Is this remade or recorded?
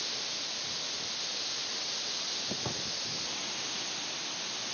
recorded